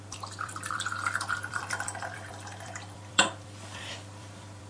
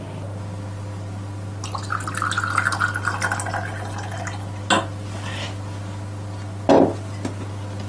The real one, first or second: second